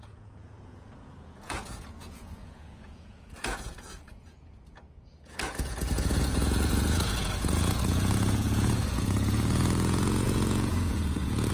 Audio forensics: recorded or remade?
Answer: remade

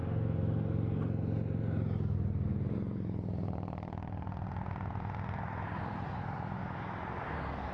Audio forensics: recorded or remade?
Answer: recorded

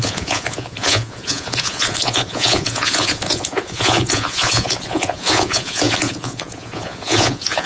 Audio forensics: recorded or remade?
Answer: remade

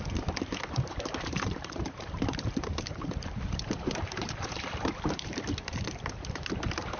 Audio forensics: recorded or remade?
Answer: remade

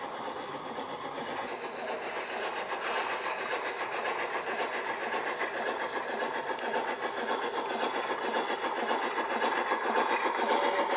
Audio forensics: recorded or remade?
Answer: recorded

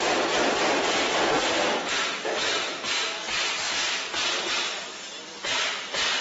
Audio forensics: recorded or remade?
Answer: recorded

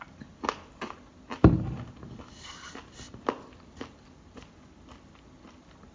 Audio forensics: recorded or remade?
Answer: recorded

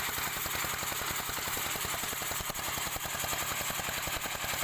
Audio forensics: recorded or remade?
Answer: recorded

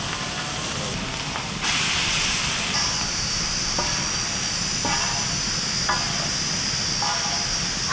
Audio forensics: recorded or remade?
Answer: recorded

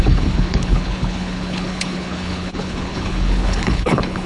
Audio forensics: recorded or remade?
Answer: remade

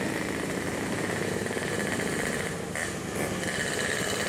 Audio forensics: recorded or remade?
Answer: recorded